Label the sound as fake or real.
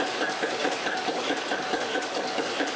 fake